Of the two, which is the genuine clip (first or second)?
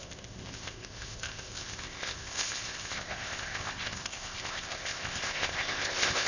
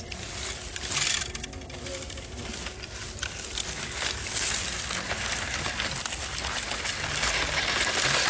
second